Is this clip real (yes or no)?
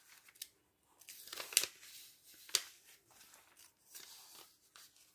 yes